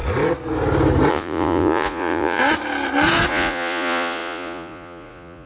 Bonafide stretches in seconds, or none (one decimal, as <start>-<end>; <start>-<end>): 0.0-1.1; 2.4-3.3